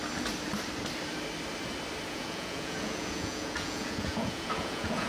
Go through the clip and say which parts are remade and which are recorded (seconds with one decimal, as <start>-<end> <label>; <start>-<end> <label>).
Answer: 0.0-2.1 recorded; 2.1-5.1 remade